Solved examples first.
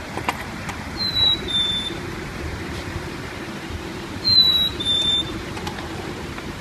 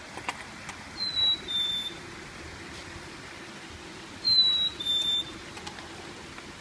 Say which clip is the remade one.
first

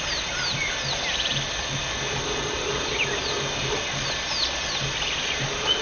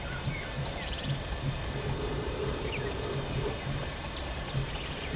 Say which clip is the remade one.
second